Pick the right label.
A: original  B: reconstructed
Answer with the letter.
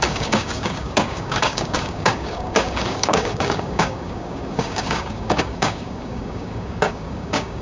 B